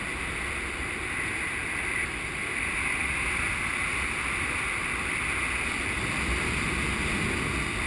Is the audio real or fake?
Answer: real